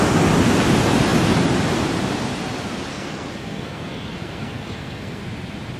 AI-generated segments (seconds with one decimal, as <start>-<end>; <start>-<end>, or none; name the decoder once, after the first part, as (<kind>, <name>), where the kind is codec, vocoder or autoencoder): 2.9-5.2 (codec, SNAC)